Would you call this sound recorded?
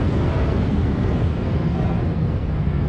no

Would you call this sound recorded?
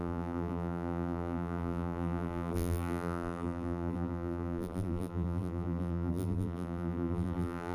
no